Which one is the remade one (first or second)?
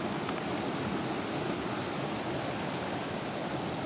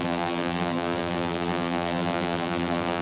second